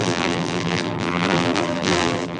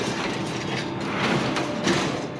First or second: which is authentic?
second